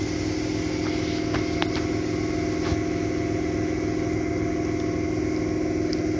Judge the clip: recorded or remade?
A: recorded